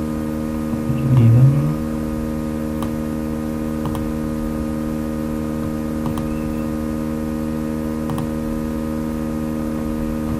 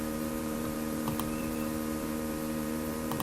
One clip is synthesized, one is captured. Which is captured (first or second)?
first